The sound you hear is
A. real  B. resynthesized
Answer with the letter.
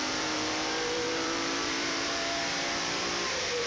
B